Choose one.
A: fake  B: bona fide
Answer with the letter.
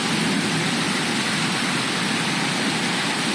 A